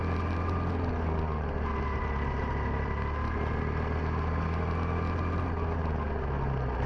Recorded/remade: recorded